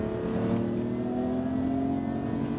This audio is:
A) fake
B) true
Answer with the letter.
B